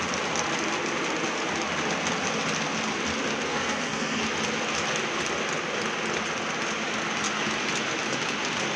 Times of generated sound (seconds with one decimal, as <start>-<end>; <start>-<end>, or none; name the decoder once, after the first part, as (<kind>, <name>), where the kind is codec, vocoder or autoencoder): 3.5-4.2 (codec, SNAC)